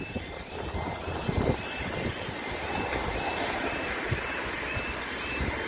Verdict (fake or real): real